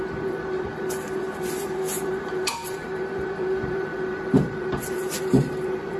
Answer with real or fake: fake